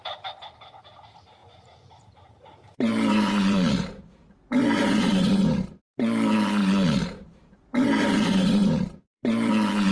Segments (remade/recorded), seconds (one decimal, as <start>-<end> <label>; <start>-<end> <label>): 0.0-1.4 recorded; 1.4-5.8 remade; 5.8-6.6 recorded; 6.6-9.5 remade; 9.5-9.9 recorded